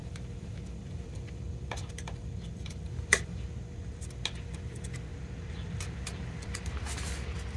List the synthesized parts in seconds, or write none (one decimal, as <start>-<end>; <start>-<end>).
0.0-4.0; 5.1-6.7